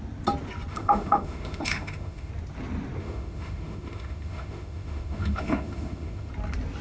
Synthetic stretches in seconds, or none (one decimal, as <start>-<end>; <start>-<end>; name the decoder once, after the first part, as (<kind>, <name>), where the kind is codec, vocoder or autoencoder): 0.7-2.3 (autoencoder, DAC-VAE); 3.0-6.3